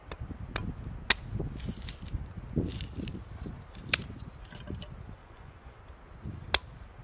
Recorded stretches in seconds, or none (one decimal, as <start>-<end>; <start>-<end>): 0.0-5.2; 5.8-7.0